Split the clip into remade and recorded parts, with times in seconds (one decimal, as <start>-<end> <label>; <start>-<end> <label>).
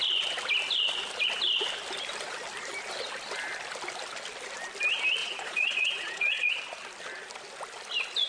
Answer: 0.0-5.2 recorded; 5.2-6.6 remade; 6.6-8.3 recorded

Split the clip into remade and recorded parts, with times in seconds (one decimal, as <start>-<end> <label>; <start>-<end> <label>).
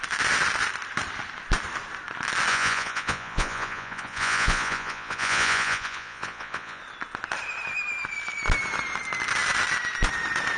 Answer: 0.0-2.5 recorded; 2.5-6.8 remade; 6.8-10.6 recorded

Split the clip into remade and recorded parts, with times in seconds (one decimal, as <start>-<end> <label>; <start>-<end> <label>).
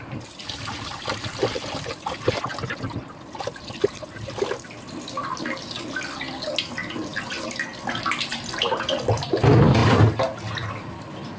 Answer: 0.0-11.4 recorded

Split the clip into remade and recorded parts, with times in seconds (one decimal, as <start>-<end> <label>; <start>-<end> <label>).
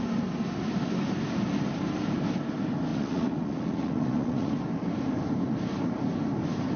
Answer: 0.0-2.9 recorded; 2.9-4.5 remade; 4.5-6.8 recorded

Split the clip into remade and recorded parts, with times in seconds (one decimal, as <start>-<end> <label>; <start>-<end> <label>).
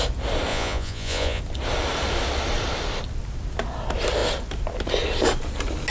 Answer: 0.0-0.5 recorded; 0.5-1.4 remade; 1.4-5.9 recorded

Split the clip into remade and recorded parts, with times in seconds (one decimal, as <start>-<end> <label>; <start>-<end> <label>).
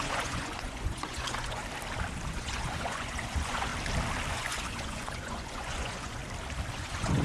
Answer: 0.0-1.6 remade; 1.6-2.3 recorded; 2.3-3.7 remade; 3.7-4.3 recorded; 4.3-6.2 remade; 6.2-6.7 recorded; 6.7-7.2 remade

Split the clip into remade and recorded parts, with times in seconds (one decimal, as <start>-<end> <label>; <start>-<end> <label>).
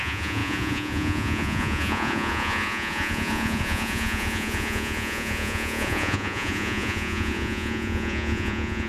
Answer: 0.0-8.9 remade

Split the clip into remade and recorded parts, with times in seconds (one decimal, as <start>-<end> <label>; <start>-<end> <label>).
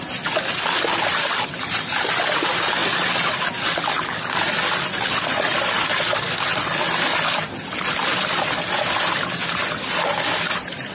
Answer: 0.0-10.9 recorded